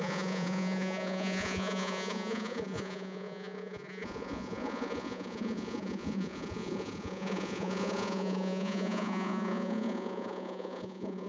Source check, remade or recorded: remade